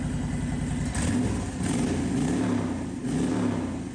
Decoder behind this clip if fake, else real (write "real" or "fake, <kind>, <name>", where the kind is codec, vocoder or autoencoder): real